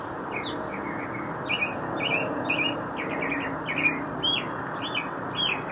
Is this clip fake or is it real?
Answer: real